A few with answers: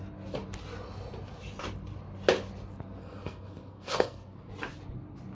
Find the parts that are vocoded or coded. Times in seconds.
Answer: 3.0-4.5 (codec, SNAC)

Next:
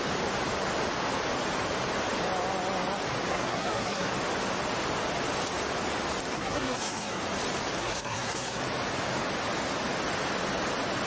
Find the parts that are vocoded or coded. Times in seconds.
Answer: 3.3-4.1 (codec, SNAC); 6.3-7.2; 7.8-8.6

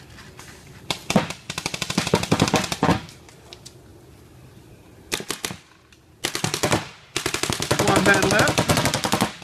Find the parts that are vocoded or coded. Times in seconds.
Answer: none

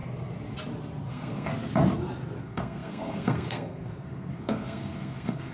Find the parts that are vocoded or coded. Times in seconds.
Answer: 1.1-1.5 (codec, SNAC); 2.4-5.5

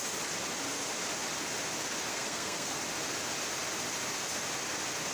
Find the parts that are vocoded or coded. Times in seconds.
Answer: 2.1-2.8 (codec, SNAC)